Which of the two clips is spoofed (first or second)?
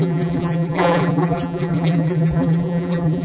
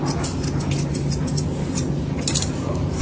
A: first